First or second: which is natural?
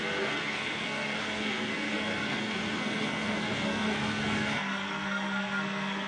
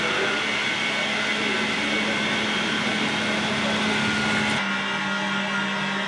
second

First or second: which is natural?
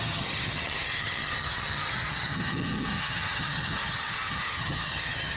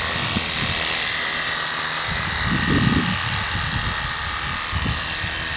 second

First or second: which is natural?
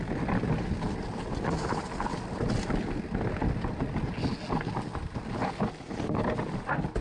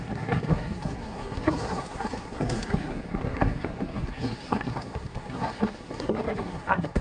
first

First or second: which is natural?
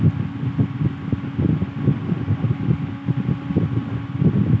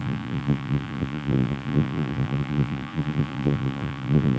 first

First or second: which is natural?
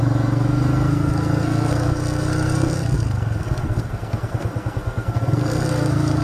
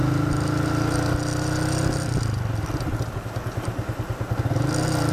second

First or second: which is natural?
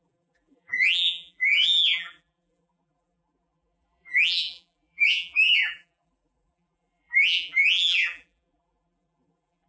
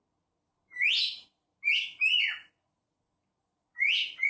second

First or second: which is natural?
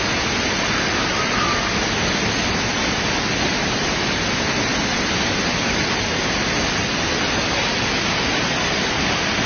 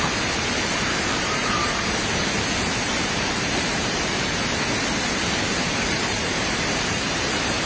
first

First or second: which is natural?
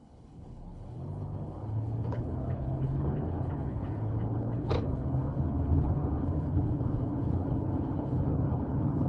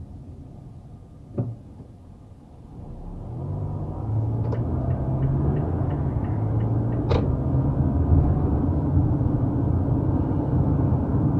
second